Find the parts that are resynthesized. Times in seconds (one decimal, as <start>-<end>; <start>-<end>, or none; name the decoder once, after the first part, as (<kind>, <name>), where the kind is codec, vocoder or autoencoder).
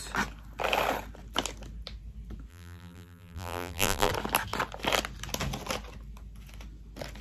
2.5-4.1 (vocoder, BigVGAN v2)